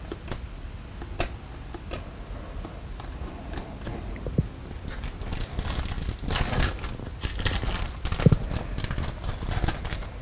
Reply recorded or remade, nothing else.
recorded